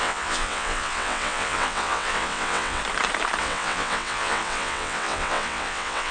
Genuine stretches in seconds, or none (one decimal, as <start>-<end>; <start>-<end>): 2.8-3.4